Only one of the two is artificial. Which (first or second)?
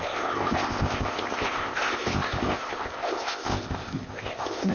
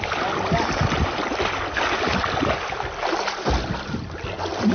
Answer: first